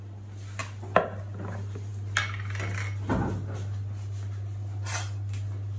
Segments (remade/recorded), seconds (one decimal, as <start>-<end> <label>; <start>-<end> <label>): 0.0-5.8 recorded